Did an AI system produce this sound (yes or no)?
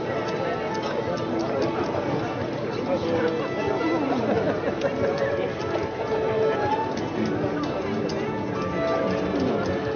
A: no